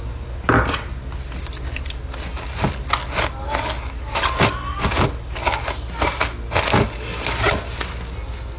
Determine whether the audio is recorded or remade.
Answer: recorded